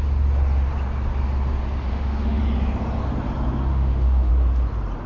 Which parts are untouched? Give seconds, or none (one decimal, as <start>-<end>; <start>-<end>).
0.0-1.9; 2.4-3.7; 4.3-5.1